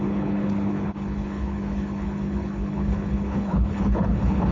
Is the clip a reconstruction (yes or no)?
yes